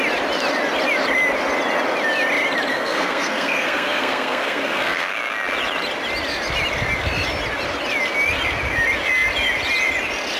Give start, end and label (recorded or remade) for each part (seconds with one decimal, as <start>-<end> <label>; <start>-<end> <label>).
0.0-2.7 recorded; 2.7-5.1 remade; 5.1-10.4 recorded

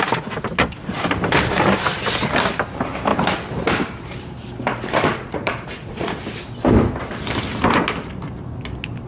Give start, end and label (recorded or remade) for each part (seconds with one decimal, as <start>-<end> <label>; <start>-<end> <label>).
0.0-4.7 recorded; 4.7-6.2 remade; 6.2-9.1 recorded

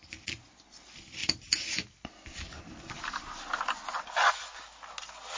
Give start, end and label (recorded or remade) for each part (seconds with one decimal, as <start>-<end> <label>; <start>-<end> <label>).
0.0-5.4 recorded

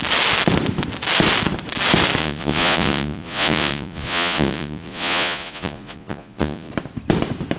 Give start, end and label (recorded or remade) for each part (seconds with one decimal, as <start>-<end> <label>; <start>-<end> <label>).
0.0-2.2 recorded; 2.2-6.7 remade; 6.7-7.6 recorded

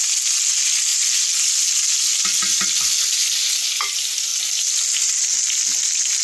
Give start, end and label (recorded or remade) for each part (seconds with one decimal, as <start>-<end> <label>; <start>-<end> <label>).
0.0-6.2 recorded